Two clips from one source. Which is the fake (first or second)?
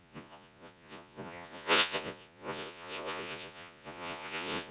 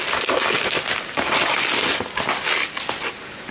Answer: first